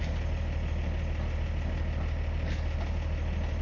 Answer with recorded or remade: recorded